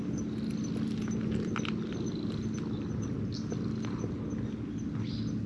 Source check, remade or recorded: recorded